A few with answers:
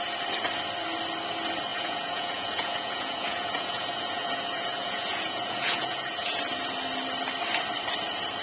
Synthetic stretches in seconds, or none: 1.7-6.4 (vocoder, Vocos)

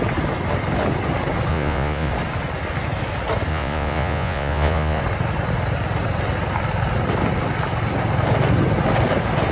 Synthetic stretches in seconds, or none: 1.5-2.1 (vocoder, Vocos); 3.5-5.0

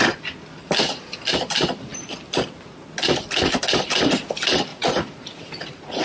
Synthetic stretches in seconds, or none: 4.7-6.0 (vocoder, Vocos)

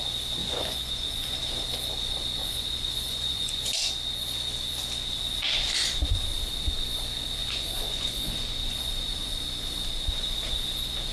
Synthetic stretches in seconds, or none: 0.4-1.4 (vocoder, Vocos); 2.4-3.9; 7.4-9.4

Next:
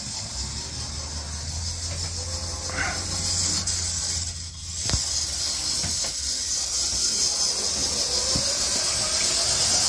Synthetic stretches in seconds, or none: none